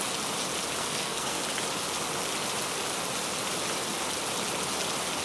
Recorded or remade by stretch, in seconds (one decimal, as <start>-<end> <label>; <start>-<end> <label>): 0.0-0.8 recorded; 0.8-1.4 remade; 1.4-5.2 recorded